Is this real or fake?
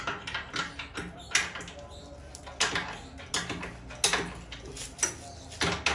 real